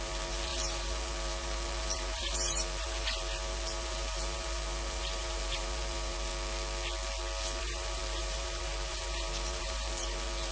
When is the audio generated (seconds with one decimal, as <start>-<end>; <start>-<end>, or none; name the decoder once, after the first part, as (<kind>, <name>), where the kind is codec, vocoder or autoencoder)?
0.0-6.3 (vocoder, BigVGAN v2); 7.6-10.5